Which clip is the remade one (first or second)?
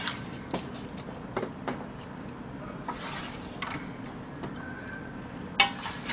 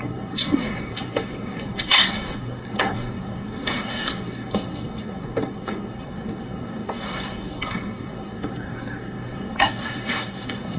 second